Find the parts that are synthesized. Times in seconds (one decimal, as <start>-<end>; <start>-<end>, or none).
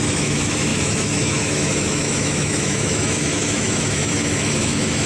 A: 0.0-5.1